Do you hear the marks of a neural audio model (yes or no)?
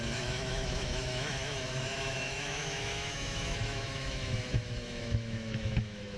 yes